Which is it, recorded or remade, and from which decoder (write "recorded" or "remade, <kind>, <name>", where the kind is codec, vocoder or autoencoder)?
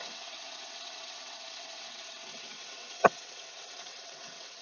remade, vocoder, WaveNeXt